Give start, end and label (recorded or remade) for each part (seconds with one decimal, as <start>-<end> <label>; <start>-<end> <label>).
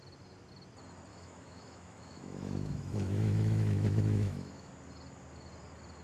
0.0-1.1 recorded; 1.1-4.7 remade; 4.7-6.0 recorded